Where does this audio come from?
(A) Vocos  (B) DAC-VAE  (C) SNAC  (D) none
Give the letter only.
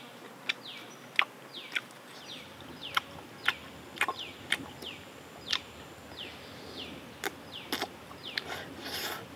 D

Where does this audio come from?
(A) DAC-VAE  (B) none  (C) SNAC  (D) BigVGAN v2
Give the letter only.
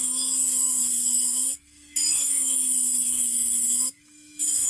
A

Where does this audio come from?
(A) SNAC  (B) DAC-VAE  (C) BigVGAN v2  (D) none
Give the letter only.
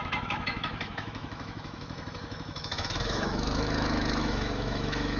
B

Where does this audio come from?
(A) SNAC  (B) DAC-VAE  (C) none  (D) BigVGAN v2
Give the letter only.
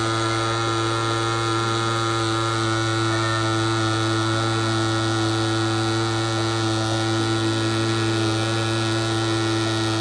C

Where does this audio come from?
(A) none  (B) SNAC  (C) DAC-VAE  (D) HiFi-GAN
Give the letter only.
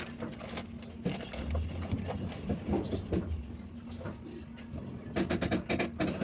A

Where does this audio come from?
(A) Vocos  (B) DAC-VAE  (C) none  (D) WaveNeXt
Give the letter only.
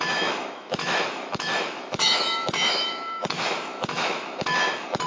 B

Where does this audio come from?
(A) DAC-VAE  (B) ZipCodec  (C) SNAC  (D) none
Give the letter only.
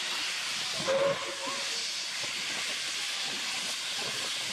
D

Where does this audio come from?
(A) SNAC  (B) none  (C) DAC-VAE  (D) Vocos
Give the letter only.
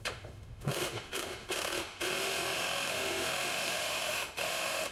C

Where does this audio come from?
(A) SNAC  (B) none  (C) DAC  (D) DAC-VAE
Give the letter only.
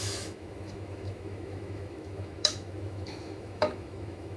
D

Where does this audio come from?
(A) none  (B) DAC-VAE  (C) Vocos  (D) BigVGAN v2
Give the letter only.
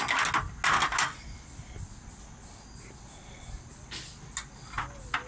A